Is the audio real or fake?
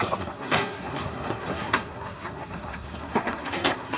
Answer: fake